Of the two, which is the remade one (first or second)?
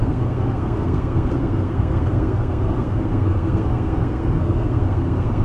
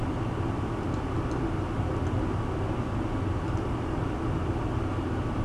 first